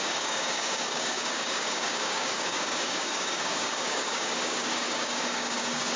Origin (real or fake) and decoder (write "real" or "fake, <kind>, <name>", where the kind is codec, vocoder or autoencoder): fake, codec, DAC